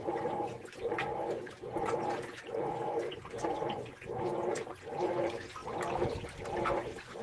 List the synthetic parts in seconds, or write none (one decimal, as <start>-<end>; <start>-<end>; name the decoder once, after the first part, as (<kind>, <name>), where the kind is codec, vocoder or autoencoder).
0.0-5.6 (vocoder, Vocos); 6.6-7.2